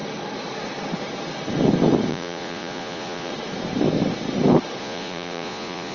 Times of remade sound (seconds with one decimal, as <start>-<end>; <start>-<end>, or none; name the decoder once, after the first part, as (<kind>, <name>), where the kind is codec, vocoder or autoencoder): 2.1-3.3 (vocoder, Vocos); 4.8-5.9